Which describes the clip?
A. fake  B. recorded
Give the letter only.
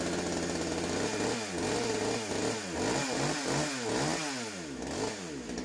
B